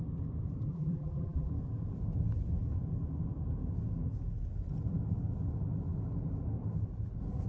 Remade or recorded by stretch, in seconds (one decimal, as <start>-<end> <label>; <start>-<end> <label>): 0.0-0.7 recorded; 0.7-1.5 remade; 1.5-7.5 recorded